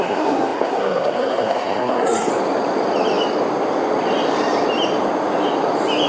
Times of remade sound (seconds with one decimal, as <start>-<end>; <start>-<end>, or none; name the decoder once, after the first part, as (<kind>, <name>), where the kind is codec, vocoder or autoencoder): 0.0-2.3 (codec, SNAC)